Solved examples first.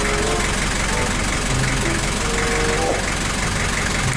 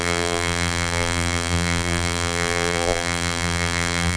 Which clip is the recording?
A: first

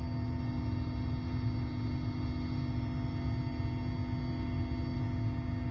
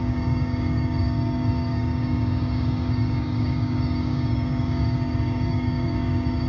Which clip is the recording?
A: first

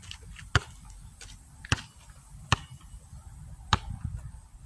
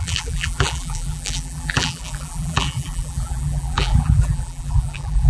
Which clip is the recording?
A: first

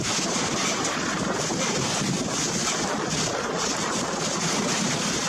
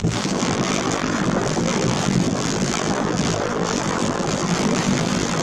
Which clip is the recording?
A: first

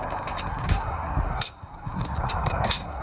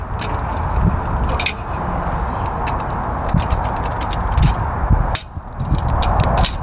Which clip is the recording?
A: second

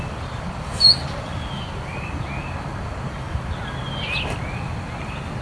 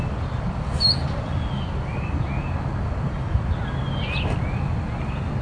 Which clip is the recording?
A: second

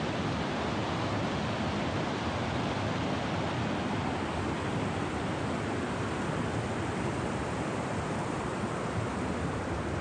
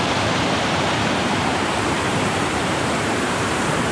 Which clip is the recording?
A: first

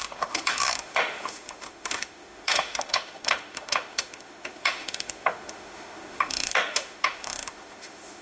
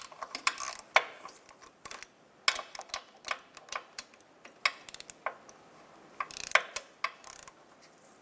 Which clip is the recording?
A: second